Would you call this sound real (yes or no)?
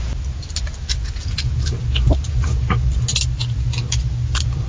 yes